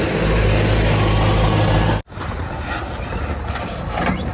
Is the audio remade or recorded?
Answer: recorded